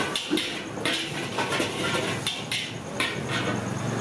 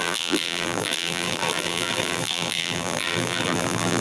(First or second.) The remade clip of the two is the second